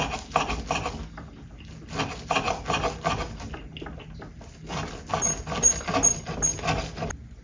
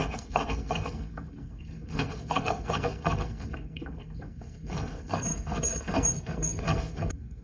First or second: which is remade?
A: second